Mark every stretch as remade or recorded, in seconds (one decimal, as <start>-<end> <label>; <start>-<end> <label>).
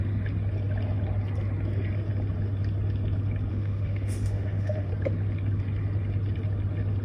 0.0-3.5 recorded; 3.5-4.9 remade; 4.9-7.0 recorded